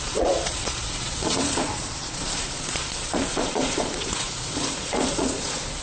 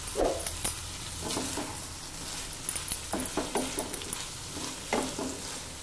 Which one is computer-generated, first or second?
first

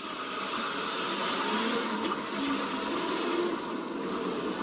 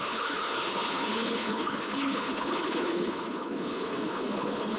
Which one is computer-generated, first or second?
second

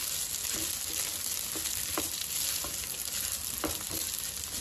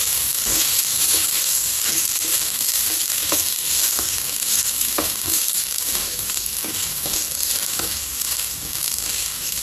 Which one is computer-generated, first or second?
second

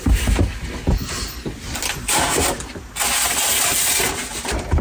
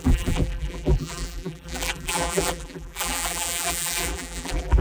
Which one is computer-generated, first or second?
second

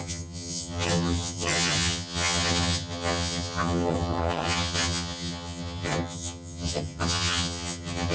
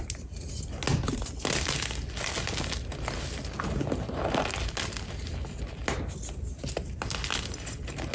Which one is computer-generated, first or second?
first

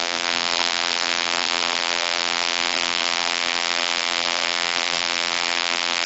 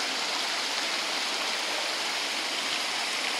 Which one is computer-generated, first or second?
first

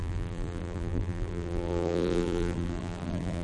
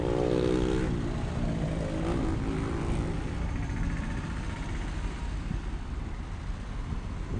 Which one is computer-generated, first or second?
first